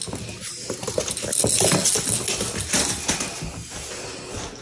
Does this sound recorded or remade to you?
recorded